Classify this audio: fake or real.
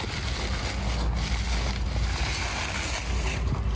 real